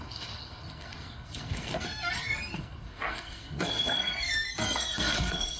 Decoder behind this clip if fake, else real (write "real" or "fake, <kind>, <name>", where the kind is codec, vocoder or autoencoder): fake, codec, SNAC